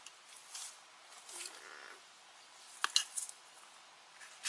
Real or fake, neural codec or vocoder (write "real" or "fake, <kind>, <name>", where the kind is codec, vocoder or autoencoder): real